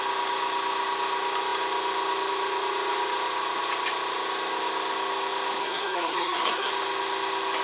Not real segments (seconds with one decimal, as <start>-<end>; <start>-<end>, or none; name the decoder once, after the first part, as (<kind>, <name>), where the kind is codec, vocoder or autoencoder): 5.6-6.7 (codec, SNAC)